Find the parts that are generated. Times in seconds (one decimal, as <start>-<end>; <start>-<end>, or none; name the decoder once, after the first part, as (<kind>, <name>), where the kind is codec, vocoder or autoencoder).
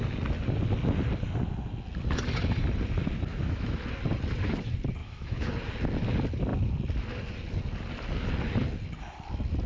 3.3-3.8 (autoencoder, DAC-VAE); 5.0-5.5